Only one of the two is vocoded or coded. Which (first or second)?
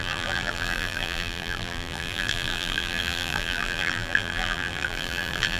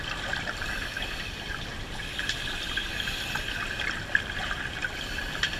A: first